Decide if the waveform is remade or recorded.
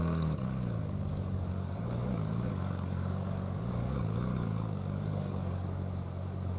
remade